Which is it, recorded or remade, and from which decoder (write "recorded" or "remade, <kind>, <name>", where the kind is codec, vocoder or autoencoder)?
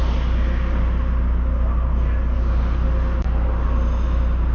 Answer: recorded